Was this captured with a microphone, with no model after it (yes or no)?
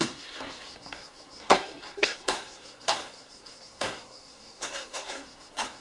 no